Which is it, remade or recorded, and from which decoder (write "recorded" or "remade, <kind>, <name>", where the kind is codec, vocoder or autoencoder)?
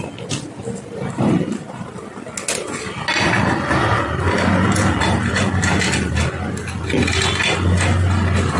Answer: recorded